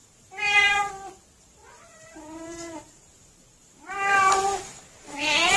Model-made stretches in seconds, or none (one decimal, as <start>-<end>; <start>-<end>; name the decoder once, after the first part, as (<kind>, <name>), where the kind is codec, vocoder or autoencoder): 0.0-0.9 (vocoder, BigVGAN v2); 1.6-5.0